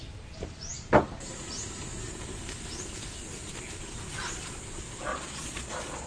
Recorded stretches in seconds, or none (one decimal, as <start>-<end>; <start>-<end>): 0.0-5.1